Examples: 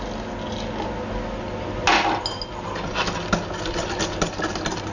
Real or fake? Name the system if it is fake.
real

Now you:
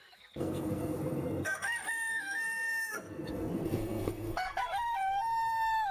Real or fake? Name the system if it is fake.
fake, codec, SNAC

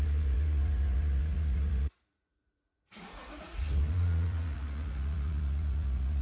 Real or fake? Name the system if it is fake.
fake, vocoder, Vocos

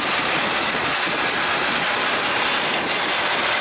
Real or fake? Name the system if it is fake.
real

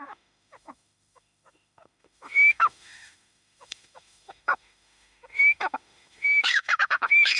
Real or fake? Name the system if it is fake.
fake, autoencoder, DAC-VAE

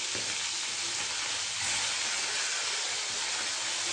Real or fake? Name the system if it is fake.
real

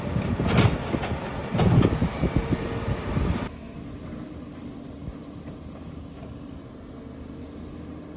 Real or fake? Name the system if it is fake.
real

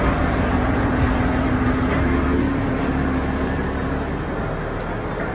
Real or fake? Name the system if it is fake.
real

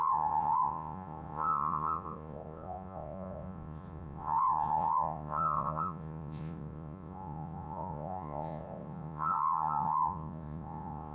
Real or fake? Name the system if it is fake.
fake, vocoder, Vocos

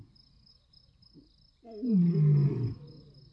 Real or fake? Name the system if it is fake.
real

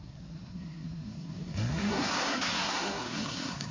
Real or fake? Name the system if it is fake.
fake, codec, SNAC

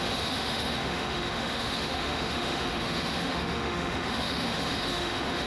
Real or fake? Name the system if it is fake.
fake, autoencoder, DAC-VAE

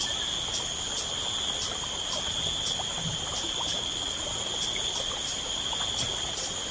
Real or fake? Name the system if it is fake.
real